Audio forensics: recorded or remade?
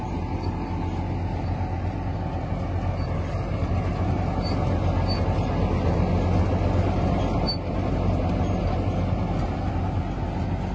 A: recorded